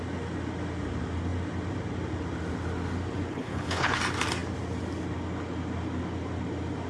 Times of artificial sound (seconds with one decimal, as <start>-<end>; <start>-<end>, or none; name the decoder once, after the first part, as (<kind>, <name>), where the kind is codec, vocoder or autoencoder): 3.3-4.0 (codec, HILCodec)

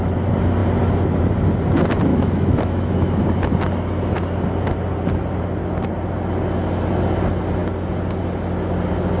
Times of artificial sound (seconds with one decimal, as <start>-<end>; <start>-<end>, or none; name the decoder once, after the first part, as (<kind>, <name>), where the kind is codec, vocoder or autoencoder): 2.1-3.2 (autoencoder, DAC-VAE)

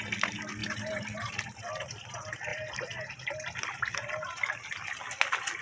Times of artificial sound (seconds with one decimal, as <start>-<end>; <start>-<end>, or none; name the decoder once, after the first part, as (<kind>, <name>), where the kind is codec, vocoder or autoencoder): 0.6-1.4 (vocoder, BigVGAN v2)

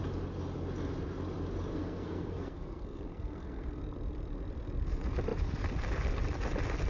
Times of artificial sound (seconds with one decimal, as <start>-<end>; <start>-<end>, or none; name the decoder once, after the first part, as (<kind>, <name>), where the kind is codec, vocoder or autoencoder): 1.7-3.8 (codec, SNAC)

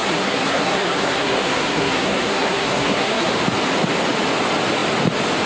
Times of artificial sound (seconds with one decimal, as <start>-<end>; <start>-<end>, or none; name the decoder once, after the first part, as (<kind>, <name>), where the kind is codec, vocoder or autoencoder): 0.0-3.3 (codec, SNAC)

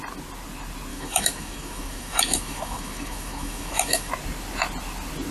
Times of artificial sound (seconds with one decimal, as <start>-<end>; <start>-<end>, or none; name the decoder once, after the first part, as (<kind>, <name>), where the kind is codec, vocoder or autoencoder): 0.9-4.1 (autoencoder, DAC-VAE)